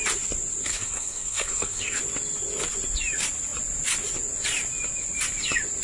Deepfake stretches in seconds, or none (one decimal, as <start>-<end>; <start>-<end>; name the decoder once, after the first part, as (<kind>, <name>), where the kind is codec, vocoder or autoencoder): 0.7-2.0 (codec, SNAC)